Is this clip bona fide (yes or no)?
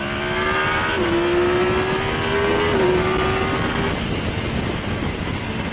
yes